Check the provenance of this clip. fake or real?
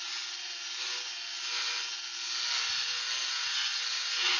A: real